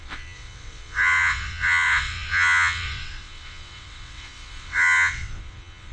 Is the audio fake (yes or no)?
yes